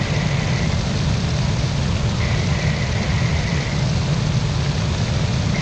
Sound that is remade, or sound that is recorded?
recorded